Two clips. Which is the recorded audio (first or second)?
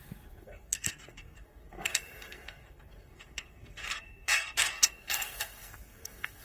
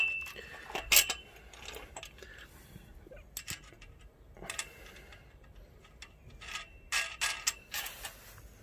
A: second